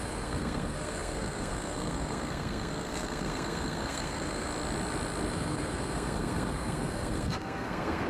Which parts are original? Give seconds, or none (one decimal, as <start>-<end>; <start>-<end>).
4.5-5.3